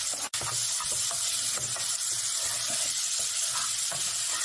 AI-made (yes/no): no